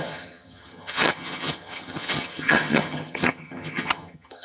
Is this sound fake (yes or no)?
yes